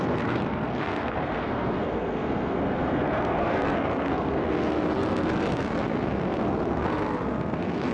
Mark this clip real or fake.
fake